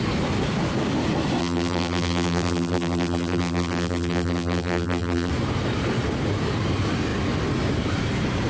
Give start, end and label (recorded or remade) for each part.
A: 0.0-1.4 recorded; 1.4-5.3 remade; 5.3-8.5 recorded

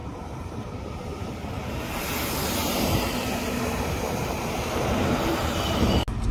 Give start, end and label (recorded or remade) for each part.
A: 0.0-1.3 remade; 1.3-2.6 recorded; 2.6-5.4 remade; 5.4-6.3 recorded

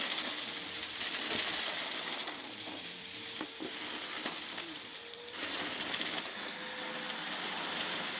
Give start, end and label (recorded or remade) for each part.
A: 0.0-2.2 recorded; 2.2-5.4 remade; 5.4-8.2 recorded